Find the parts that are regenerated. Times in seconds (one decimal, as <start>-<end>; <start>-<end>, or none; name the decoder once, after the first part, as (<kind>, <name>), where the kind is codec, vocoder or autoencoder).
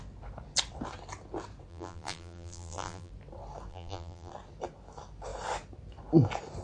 1.7-3.1 (vocoder, BigVGAN v2); 3.7-4.3